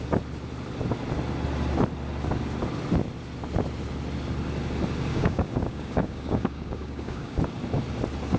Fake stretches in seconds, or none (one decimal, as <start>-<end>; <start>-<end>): 5.1-7.4